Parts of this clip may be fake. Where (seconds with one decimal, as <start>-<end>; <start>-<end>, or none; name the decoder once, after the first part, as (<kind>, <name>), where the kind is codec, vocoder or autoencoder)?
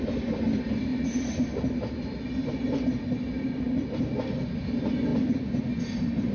none